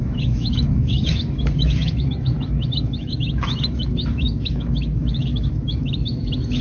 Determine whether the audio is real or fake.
fake